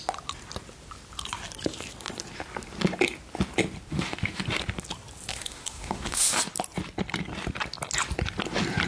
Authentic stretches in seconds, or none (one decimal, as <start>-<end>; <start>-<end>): 0.0-3.9; 4.4-5.3; 6.4-8.9